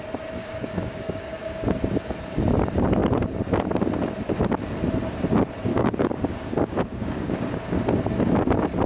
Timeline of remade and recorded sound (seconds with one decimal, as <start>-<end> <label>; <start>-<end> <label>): 0.0-0.4 recorded; 0.4-1.8 remade; 1.8-5.7 recorded; 5.7-7.6 remade; 7.6-8.9 recorded